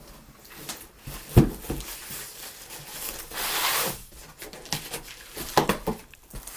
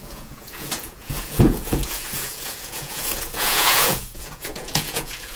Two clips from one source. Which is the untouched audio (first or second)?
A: first